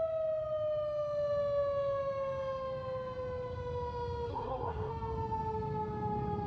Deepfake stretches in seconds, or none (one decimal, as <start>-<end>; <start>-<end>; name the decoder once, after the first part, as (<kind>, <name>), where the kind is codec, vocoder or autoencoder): 4.3-4.9 (codec, SNAC)

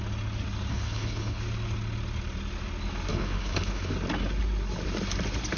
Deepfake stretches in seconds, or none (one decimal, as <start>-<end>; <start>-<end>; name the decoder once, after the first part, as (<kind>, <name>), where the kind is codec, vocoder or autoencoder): 0.7-1.4 (codec, HILCodec); 3.1-3.9

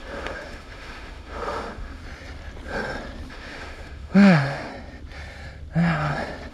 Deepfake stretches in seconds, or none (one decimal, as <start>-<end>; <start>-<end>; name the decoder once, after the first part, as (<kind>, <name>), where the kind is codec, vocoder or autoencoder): 0.0-2.0 (autoencoder, DAC-VAE); 3.3-4.7